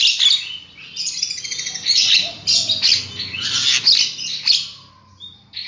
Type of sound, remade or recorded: recorded